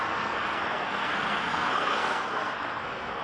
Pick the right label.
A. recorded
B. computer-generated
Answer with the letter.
B